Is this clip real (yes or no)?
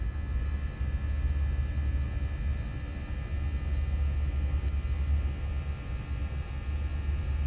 yes